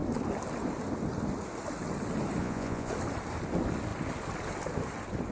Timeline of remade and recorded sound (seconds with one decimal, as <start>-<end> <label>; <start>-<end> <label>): 0.0-2.4 recorded; 2.4-2.9 remade; 2.9-5.3 recorded